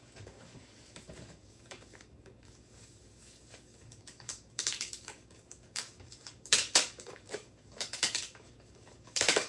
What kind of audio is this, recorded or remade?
remade